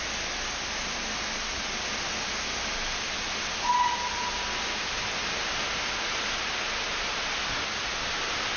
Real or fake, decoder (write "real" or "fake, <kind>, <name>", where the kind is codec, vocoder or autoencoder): real